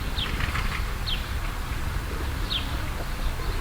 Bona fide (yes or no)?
yes